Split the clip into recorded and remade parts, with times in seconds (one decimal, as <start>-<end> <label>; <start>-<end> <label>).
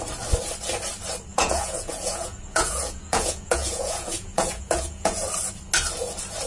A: 0.0-1.3 recorded; 1.3-5.2 remade; 5.2-6.5 recorded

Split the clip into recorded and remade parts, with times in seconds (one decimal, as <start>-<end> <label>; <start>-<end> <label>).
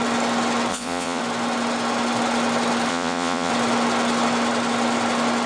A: 0.0-0.7 recorded; 0.7-1.2 remade; 1.2-2.9 recorded; 2.9-3.5 remade; 3.5-5.5 recorded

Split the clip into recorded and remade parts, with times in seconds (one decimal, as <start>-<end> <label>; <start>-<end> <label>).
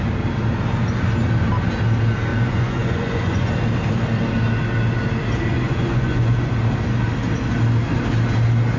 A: 0.0-2.3 recorded; 2.3-3.5 remade; 3.5-5.5 recorded; 5.5-6.5 remade; 6.5-8.8 recorded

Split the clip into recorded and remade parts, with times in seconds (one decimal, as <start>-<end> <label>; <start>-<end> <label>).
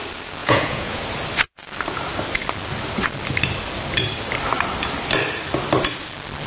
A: 0.0-0.4 recorded; 0.4-1.0 remade; 1.0-6.5 recorded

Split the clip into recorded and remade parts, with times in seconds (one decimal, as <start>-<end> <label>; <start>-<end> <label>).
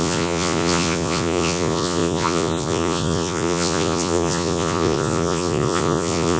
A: 0.0-6.4 remade